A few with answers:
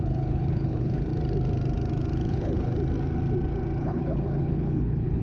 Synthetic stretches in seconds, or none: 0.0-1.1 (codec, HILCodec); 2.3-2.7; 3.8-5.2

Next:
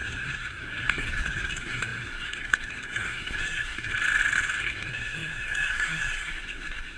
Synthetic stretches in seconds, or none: 0.0-3.9 (codec, SNAC); 4.6-7.0